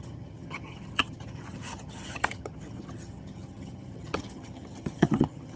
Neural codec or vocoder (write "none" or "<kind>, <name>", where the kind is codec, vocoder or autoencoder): vocoder, HiFi-GAN